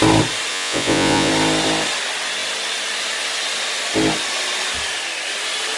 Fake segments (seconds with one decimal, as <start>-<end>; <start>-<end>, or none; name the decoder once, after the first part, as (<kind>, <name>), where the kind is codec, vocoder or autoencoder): 0.5-1.3 (vocoder, Vocos)